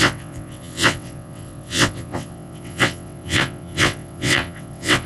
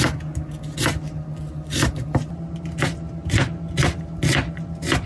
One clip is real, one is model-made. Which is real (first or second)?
second